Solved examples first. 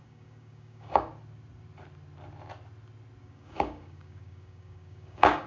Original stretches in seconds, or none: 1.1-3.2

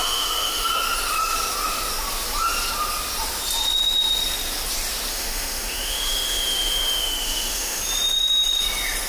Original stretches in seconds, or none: 0.7-5.1; 7.8-9.1